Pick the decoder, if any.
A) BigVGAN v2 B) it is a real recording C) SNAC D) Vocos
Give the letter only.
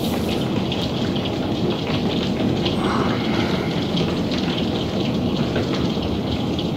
B